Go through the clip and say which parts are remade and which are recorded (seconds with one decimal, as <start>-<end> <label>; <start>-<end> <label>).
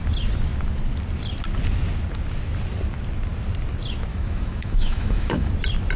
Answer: 0.0-4.1 recorded; 4.1-5.5 remade; 5.5-6.0 recorded